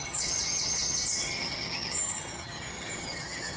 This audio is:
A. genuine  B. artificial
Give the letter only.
B